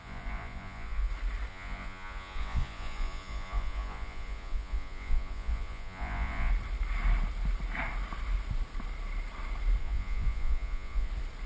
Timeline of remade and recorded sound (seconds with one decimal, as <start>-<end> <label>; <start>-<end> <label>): 0.0-1.1 remade; 1.1-1.5 recorded; 1.5-6.5 remade; 6.5-9.8 recorded; 9.8-11.1 remade; 11.1-11.5 recorded

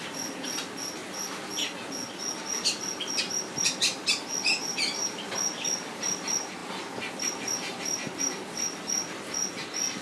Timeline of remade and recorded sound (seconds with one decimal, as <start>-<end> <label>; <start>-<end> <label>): 0.0-10.0 recorded